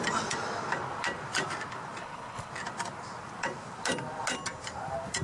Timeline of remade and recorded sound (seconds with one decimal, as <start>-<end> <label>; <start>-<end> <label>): 0.0-2.0 recorded; 2.0-2.5 remade; 2.5-5.2 recorded